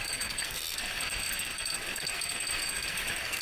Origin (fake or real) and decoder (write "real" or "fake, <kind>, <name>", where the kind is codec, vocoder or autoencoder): fake, codec, SNAC